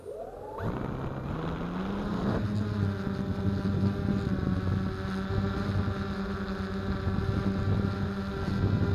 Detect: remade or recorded recorded